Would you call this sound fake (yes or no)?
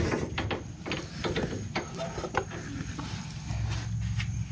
no